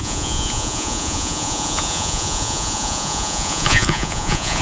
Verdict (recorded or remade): remade